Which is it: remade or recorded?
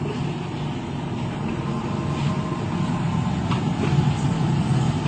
recorded